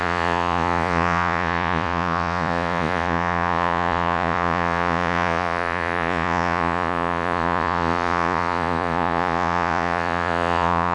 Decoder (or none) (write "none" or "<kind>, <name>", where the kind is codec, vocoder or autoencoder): vocoder, Vocos